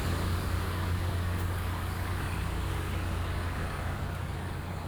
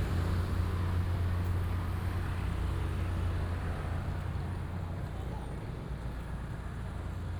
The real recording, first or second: second